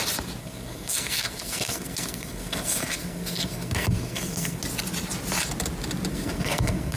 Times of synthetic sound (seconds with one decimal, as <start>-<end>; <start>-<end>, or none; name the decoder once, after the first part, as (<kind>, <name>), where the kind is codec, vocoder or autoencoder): 0.4-4.6 (codec, SNAC); 6.1-7.0